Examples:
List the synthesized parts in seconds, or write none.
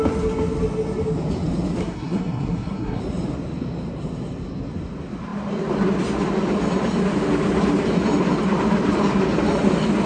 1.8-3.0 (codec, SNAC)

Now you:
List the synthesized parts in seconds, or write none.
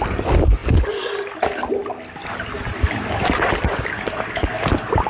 none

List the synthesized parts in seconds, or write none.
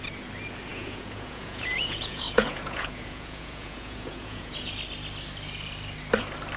0.7-4.7 (vocoder, Vocos)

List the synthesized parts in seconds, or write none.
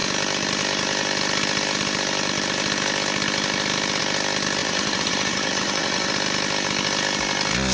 4.6-6.1 (vocoder, Vocos)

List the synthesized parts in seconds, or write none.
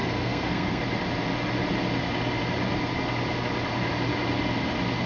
0.0-0.8 (codec, SNAC)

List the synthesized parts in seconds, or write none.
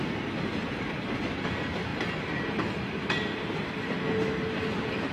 1.9-3.4 (vocoder, BigVGAN v2)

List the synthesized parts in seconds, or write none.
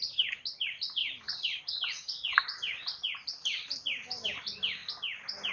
1.0-4.3 (vocoder, BigVGAN v2)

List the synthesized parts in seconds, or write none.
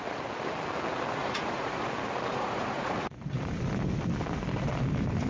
1.2-1.9 (vocoder, Vocos); 2.3-3.4